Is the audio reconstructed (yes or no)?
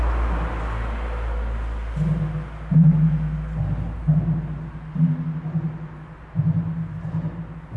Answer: no